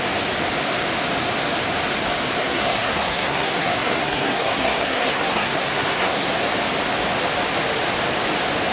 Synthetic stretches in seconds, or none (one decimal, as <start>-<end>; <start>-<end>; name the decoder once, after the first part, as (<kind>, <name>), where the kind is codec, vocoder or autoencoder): 2.4-6.3 (codec, SNAC)